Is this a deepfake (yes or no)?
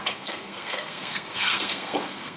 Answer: yes